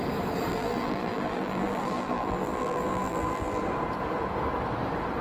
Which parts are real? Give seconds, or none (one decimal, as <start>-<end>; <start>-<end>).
0.0-0.5; 3.6-5.2